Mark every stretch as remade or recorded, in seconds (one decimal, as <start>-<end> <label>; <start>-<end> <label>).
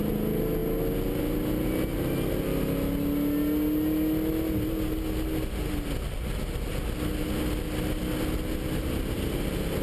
0.0-9.8 recorded